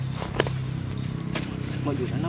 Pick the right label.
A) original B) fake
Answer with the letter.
A